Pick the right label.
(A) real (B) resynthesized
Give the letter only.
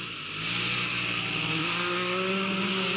A